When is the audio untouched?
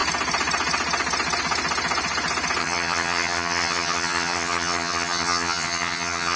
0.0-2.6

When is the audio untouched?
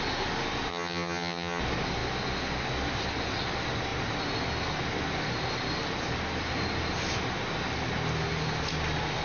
0.0-0.7; 1.6-9.2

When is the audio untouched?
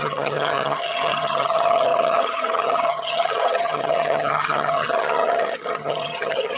none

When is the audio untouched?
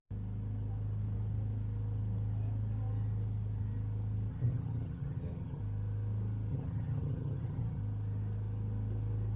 0.0-4.3; 5.6-6.5; 7.8-9.4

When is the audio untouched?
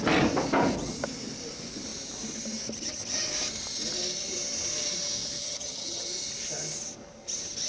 0.0-5.4; 6.1-7.7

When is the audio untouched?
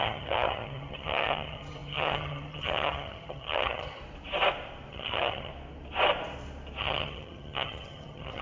4.0-4.9; 5.5-6.8